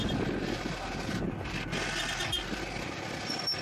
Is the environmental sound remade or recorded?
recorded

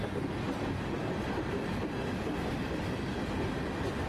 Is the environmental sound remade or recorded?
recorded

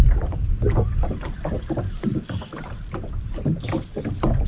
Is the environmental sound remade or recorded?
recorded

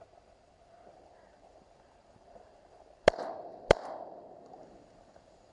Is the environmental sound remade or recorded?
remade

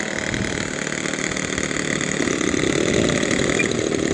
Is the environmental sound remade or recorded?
recorded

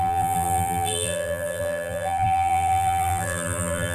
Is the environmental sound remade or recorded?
remade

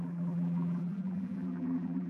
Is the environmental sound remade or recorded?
remade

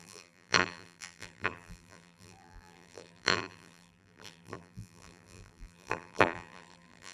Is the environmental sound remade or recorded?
remade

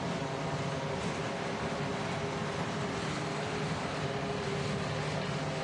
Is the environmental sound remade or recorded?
recorded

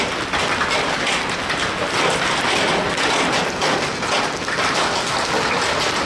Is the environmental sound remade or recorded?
recorded